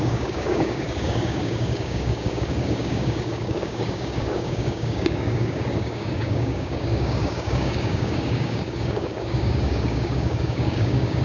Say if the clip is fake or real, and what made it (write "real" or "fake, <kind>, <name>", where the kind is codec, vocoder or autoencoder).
fake, codec, DAC